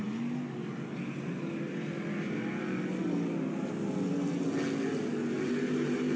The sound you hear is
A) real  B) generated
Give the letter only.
A